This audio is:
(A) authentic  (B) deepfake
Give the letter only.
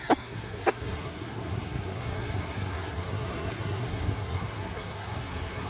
B